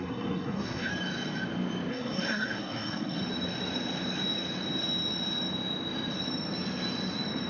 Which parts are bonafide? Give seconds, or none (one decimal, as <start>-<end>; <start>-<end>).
0.9-1.9; 3.2-7.5